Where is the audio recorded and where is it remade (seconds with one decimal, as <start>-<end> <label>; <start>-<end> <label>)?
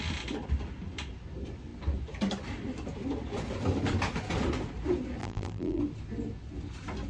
0.0-5.2 recorded; 5.2-5.8 remade; 5.8-7.1 recorded